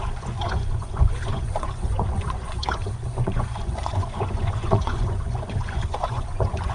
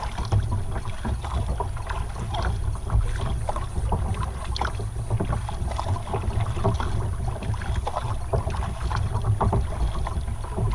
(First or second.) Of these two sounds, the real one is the second